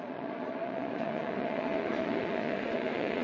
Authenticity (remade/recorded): remade